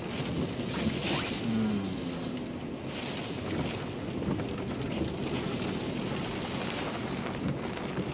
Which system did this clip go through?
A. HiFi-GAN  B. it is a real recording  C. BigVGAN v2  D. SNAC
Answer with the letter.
B